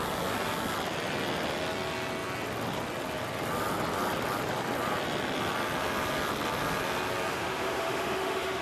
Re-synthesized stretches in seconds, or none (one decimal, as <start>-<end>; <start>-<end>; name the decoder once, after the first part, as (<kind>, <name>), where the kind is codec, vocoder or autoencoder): 7.3-8.6 (autoencoder, DAC-VAE)